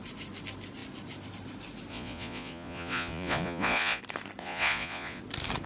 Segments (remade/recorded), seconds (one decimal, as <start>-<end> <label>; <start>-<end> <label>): 0.0-1.9 recorded; 1.9-4.0 remade; 4.0-4.4 recorded; 4.4-5.2 remade; 5.2-5.7 recorded